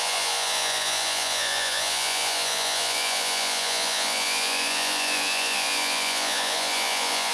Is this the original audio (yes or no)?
no